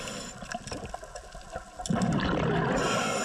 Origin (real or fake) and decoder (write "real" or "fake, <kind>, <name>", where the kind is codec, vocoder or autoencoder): real